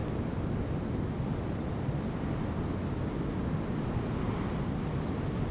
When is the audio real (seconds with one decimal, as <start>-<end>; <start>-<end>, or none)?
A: 0.0-5.5